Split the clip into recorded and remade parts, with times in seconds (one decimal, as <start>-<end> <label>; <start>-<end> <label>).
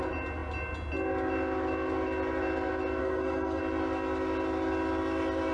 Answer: 0.0-3.0 recorded; 3.0-3.6 remade; 3.6-5.5 recorded